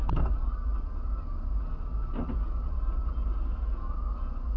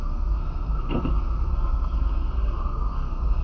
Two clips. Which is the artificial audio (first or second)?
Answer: second